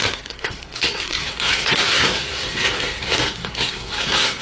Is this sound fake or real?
fake